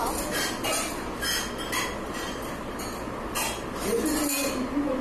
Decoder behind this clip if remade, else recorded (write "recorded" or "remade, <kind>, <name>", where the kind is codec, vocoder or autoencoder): recorded